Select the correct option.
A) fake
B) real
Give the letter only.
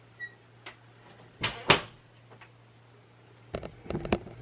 B